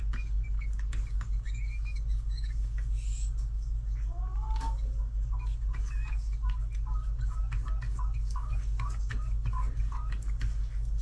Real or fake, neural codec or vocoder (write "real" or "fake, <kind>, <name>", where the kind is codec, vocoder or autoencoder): fake, codec, DAC